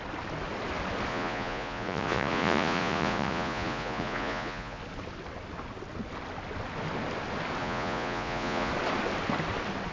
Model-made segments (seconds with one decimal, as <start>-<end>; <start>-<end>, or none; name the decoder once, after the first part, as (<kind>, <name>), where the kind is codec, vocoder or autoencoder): 1.1-4.8 (vocoder, Vocos); 7.6-8.7